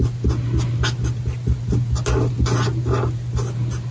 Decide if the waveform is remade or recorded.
recorded